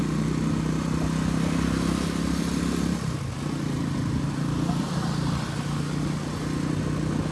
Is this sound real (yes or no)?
yes